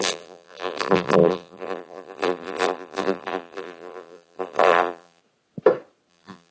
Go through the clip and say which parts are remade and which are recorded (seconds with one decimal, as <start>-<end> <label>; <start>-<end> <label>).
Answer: 0.0-5.2 remade; 5.2-6.1 recorded; 6.1-6.5 remade